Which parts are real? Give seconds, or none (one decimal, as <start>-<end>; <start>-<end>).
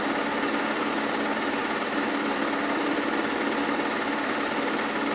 0.0-5.1